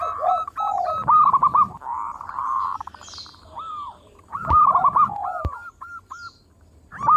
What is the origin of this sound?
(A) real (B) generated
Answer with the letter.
B